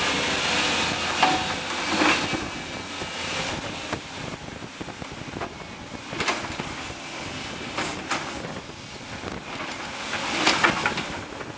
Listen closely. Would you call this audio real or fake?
real